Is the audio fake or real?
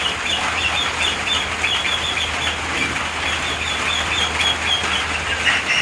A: real